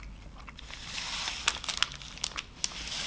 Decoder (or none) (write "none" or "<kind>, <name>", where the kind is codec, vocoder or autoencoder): none